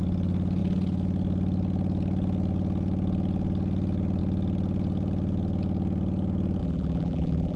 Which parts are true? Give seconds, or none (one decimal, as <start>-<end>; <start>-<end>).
0.0-6.6